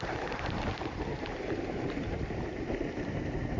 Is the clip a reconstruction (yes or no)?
yes